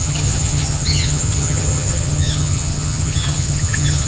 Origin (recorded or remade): remade